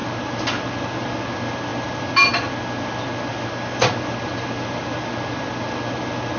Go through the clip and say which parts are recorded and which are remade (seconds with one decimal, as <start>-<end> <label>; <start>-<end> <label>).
0.0-6.4 recorded